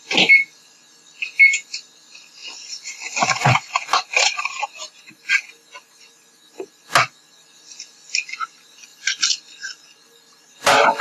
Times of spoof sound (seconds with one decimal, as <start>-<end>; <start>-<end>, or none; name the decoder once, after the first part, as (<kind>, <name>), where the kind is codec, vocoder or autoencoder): 2.4-4.4 (vocoder, BigVGAN v2); 8.9-11.0